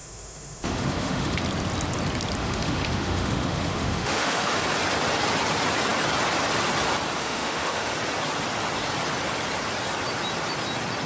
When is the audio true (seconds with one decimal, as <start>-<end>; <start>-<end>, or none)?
1.4-2.4; 4.6-7.2; 7.9-11.1